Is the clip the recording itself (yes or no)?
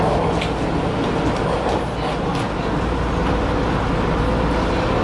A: yes